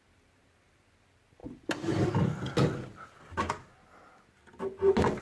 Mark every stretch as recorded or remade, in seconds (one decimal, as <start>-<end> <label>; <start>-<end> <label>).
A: 0.0-5.2 recorded